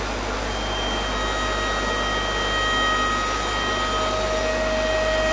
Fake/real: real